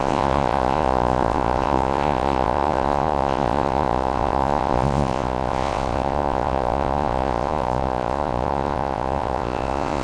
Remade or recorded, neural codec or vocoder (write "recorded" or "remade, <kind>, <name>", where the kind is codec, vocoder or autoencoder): remade, vocoder, Vocos